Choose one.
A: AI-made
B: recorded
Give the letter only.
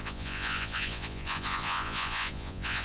A